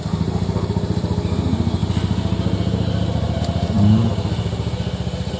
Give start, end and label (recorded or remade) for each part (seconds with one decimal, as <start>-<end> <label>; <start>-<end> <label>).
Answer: 0.0-5.4 recorded